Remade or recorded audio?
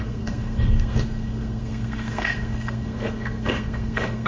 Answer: remade